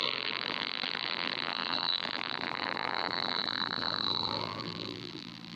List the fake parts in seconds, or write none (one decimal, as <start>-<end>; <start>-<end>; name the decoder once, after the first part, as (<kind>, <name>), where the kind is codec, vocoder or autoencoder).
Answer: 0.0-5.6 (vocoder, BigVGAN v2)